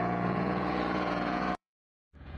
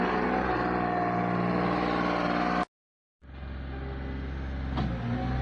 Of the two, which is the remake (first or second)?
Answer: first